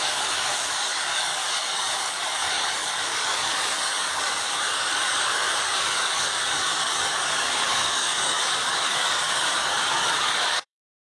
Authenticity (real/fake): fake